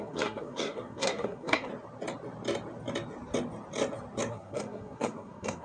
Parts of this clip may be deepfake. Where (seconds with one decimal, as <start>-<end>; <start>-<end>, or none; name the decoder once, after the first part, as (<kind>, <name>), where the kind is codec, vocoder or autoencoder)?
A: 0.0-1.7 (codec, SNAC); 4.3-5.6